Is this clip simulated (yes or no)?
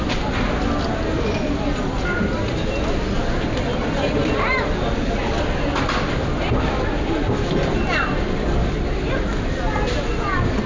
no